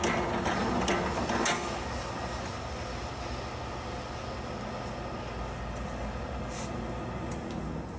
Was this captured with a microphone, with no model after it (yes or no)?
yes